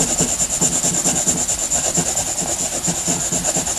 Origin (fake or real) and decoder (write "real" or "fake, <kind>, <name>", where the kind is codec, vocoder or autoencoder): real